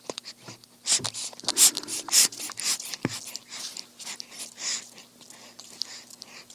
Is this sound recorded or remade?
recorded